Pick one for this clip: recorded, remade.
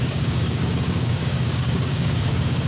remade